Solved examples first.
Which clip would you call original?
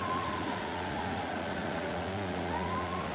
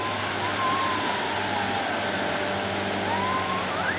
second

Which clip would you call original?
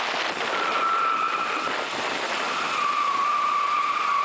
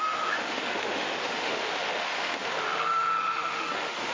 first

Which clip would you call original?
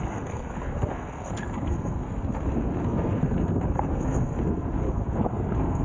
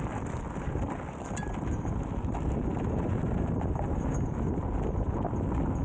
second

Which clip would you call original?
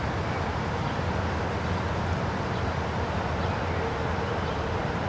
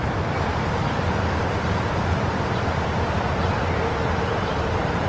first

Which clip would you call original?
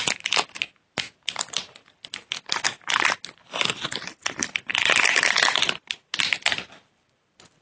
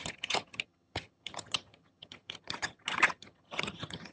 first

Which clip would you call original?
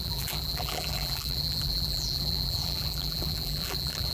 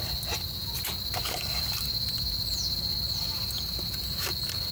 second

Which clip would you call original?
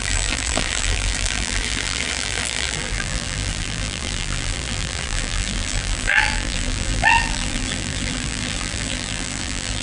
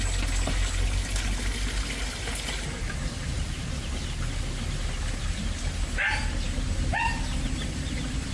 second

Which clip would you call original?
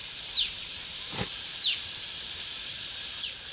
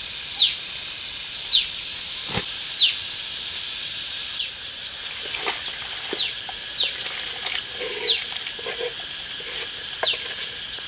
second